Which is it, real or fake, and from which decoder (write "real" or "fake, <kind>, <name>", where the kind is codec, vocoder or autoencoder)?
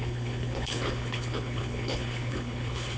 fake, codec, HILCodec